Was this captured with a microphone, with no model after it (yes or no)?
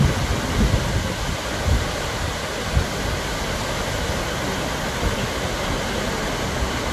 yes